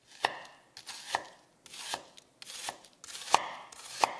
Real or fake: real